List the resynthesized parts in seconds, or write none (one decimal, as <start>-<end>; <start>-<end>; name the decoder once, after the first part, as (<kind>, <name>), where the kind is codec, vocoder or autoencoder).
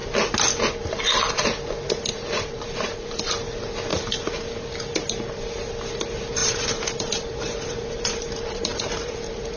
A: 2.1-3.3 (vocoder, BigVGAN v2); 6.4-9.6